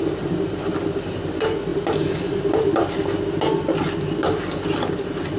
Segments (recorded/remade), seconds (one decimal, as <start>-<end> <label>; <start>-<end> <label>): 0.0-5.4 recorded